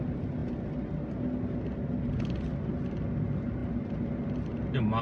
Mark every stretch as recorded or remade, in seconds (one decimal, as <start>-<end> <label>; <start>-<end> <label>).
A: 0.0-5.0 recorded